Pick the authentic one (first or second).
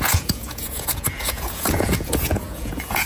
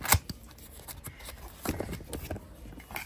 second